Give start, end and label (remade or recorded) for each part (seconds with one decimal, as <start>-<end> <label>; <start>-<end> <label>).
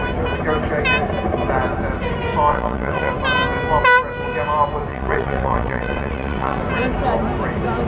0.0-2.5 recorded; 2.5-3.1 remade; 3.1-4.9 recorded; 4.9-6.6 remade; 6.6-7.9 recorded